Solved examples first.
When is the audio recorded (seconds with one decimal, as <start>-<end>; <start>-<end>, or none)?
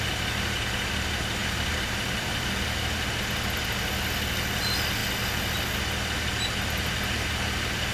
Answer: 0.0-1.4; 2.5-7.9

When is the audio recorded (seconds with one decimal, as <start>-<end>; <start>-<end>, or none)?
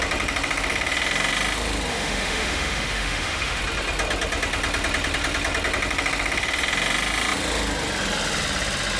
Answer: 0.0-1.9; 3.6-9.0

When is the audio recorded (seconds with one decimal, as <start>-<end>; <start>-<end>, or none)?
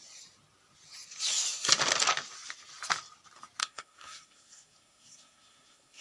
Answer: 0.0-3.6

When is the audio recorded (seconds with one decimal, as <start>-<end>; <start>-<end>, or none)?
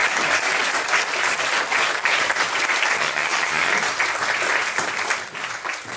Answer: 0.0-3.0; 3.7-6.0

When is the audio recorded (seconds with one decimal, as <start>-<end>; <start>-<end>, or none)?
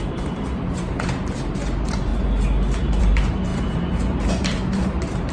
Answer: 2.1-3.0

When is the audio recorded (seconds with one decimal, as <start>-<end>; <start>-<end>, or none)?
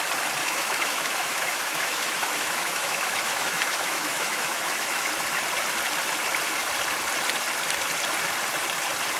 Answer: 0.0-0.4; 5.1-9.2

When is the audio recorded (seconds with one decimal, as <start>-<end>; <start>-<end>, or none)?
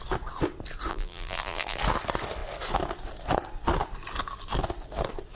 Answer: 0.0-0.9; 1.8-5.4